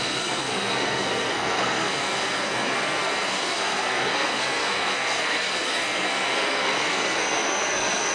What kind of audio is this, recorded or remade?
remade